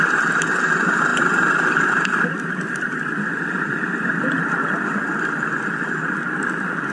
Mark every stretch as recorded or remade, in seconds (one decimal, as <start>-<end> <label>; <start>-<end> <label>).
0.0-6.9 remade

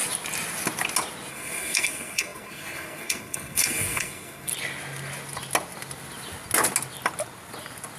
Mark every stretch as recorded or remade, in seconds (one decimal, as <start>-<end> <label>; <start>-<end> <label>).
0.0-1.3 recorded; 1.3-4.5 remade; 4.5-8.0 recorded

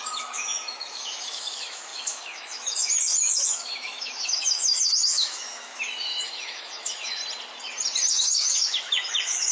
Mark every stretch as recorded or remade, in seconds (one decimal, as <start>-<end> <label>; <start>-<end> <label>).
0.0-7.2 remade; 7.2-8.1 recorded; 8.1-9.5 remade